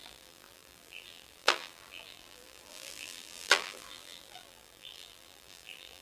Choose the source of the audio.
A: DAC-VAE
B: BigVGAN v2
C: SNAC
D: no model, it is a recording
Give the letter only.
B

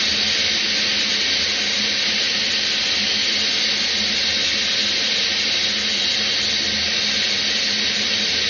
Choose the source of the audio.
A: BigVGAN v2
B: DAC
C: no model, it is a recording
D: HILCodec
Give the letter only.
C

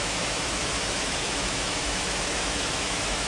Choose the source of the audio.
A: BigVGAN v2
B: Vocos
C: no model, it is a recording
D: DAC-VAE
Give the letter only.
D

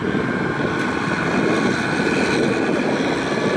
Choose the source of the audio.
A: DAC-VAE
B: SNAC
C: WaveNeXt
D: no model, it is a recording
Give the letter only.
D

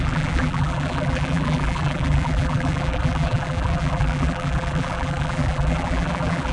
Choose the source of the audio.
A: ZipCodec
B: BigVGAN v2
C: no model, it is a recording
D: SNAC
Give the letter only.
B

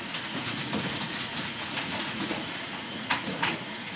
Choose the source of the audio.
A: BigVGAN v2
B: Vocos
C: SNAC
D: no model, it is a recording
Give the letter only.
B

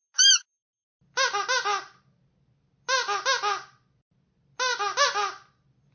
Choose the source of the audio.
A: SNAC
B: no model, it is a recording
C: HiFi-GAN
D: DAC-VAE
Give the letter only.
B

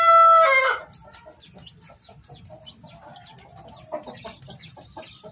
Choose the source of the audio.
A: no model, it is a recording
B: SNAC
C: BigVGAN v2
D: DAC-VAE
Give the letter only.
A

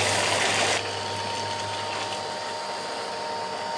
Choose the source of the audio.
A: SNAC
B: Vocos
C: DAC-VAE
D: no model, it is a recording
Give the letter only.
D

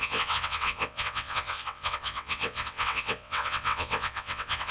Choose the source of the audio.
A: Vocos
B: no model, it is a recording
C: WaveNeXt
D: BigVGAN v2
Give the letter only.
C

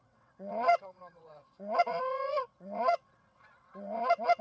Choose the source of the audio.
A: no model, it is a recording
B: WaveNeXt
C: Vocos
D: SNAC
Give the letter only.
B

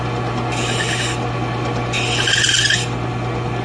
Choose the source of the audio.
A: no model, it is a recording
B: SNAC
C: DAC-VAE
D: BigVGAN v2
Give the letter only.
A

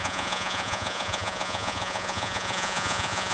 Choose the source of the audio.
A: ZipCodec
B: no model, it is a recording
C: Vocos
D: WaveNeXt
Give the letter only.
C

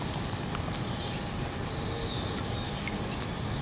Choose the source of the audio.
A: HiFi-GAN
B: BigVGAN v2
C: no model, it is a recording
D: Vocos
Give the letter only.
C